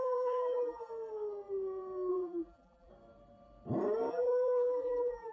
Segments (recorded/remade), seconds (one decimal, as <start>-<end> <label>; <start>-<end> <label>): 0.0-0.9 remade; 0.9-2.1 recorded; 2.1-2.9 remade; 2.9-4.1 recorded; 4.1-5.3 remade